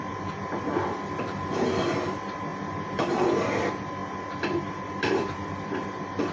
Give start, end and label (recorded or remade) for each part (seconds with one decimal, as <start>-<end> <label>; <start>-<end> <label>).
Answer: 0.0-6.3 recorded